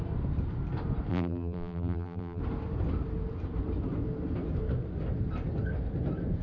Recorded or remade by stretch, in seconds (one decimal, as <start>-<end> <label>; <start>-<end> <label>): 0.0-1.1 recorded; 1.1-2.4 remade; 2.4-6.4 recorded